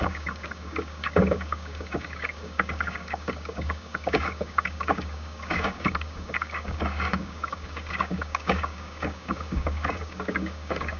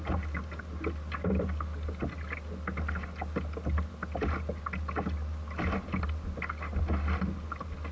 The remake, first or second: first